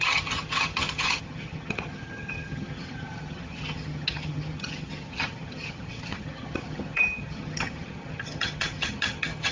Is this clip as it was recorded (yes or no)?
no